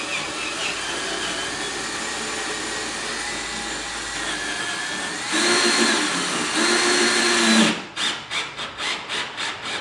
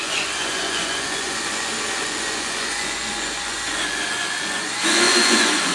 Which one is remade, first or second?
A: second